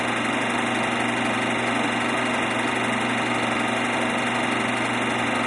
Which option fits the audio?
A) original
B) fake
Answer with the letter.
A